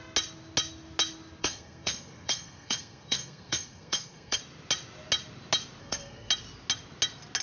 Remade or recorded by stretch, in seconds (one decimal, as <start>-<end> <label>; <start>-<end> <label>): 0.0-1.4 recorded; 1.4-4.4 remade; 4.4-5.8 recorded; 5.8-6.3 remade; 6.3-7.4 recorded